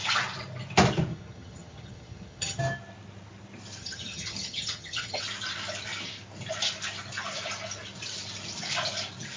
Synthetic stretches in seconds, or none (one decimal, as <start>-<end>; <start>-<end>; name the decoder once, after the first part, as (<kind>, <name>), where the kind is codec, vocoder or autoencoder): 1.1-2.6 (vocoder, HiFi-GAN); 3.8-5.2